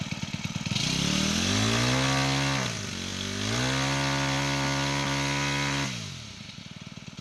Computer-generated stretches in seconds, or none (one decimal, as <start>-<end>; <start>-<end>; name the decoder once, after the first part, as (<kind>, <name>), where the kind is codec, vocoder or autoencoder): none